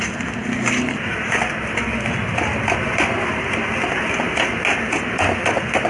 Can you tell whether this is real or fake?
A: real